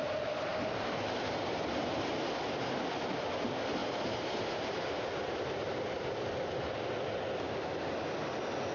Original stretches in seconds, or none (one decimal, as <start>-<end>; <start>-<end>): 0.0-0.5; 2.1-3.8; 5.6-8.7